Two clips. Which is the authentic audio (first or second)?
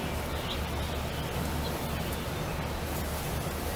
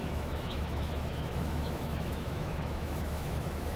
first